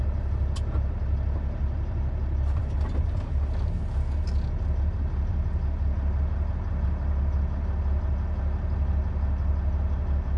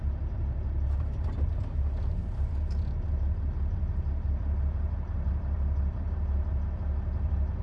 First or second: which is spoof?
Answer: second